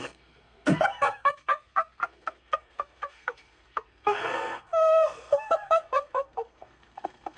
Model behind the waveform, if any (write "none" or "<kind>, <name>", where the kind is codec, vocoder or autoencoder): codec, SNAC